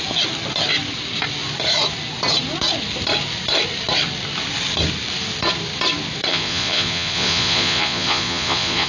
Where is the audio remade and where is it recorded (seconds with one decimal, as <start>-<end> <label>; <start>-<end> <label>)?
0.0-6.3 recorded; 6.3-8.9 remade

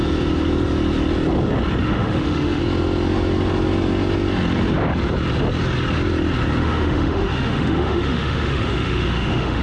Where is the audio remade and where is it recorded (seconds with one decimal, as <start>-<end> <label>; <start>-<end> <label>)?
0.0-1.8 recorded; 1.8-2.6 remade; 2.6-6.6 recorded; 6.6-9.6 remade

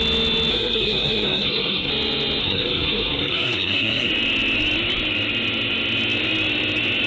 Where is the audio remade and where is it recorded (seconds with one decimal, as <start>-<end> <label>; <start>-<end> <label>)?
0.0-0.5 recorded; 0.5-1.9 remade; 1.9-2.4 recorded; 2.4-4.1 remade; 4.1-7.1 recorded

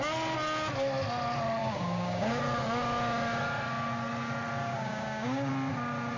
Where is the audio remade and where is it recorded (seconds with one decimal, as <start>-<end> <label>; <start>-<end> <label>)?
0.0-1.6 recorded; 1.6-2.4 remade; 2.4-4.6 recorded; 4.6-5.5 remade; 5.5-6.2 recorded

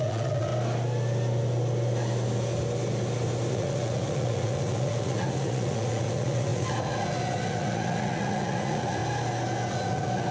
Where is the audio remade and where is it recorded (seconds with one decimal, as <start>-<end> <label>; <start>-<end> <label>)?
0.0-0.5 remade; 0.5-3.5 recorded; 3.5-9.0 remade; 9.0-9.7 recorded; 9.7-10.3 remade

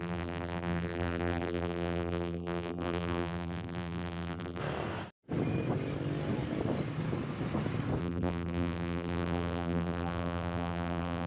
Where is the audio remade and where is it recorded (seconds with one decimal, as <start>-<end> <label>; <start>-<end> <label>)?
0.0-4.6 remade; 4.6-8.0 recorded; 8.0-11.3 remade